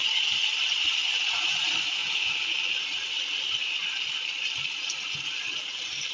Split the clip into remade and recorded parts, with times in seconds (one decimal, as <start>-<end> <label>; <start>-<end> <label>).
0.0-6.1 recorded